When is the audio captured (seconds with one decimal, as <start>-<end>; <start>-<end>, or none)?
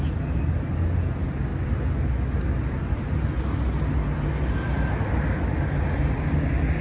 0.0-6.8